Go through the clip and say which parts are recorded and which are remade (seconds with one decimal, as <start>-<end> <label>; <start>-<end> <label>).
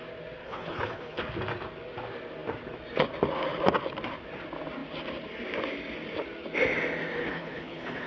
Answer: 0.0-0.4 recorded; 0.4-1.2 remade; 1.2-7.2 recorded; 7.2-8.1 remade